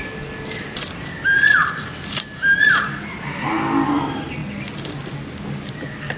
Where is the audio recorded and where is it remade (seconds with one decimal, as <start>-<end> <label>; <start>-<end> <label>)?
0.0-6.2 recorded